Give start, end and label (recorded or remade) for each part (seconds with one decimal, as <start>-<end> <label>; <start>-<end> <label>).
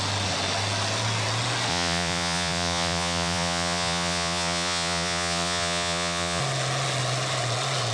0.0-1.7 recorded; 1.7-6.4 remade; 6.4-7.9 recorded